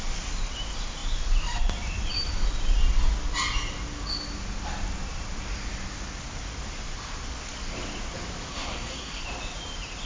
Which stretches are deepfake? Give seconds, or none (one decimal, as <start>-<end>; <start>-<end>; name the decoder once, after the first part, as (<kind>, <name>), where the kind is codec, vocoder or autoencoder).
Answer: 8.5-9.2 (codec, SNAC)